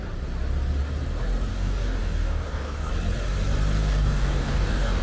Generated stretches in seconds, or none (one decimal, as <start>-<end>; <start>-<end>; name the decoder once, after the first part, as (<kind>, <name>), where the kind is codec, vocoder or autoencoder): 1.5-2.9 (codec, DAC); 3.8-5.0

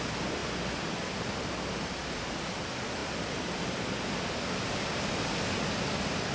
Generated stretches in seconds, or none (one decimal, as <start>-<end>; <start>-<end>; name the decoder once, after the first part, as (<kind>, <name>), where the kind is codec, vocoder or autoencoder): none

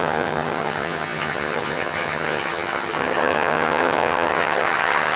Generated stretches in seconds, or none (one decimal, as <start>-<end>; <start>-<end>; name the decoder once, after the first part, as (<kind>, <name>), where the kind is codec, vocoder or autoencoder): 0.0-5.2 (vocoder, HiFi-GAN)

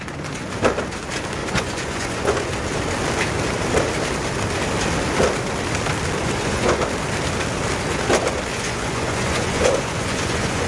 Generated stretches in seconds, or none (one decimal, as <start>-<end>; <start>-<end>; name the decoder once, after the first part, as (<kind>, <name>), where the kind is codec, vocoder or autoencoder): 1.4-2.5 (vocoder, Vocos); 6.2-6.8; 8.5-10.7

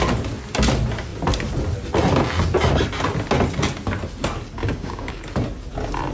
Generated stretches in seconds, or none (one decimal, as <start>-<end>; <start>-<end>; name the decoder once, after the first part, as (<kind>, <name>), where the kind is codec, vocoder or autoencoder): 4.6-5.2 (codec, DAC)

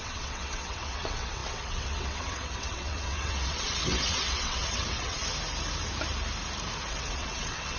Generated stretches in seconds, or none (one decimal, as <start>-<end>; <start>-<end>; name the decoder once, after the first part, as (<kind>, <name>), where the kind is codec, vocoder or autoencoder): 0.0-5.2 (vocoder, WaveNeXt); 6.9-7.8